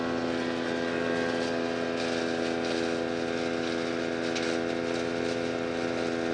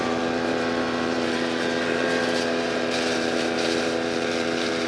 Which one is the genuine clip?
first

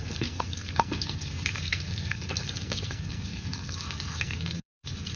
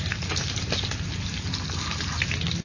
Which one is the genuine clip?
second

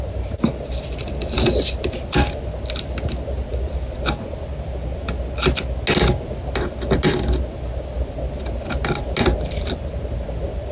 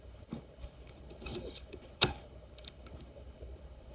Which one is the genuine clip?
first